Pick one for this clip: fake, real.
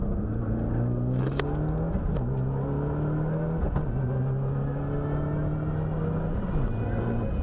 real